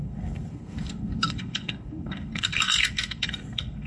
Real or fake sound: fake